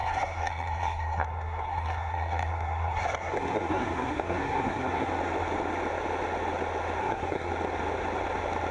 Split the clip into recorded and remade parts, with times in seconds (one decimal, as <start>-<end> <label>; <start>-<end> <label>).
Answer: 0.0-5.1 remade; 5.1-7.0 recorded; 7.0-7.5 remade; 7.5-8.7 recorded